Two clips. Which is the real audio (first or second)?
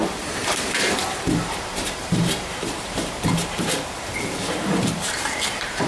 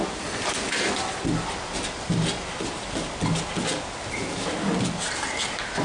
second